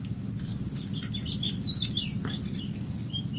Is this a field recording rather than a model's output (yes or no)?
yes